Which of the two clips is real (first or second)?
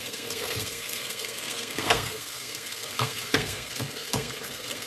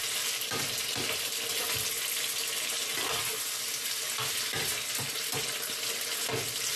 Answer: second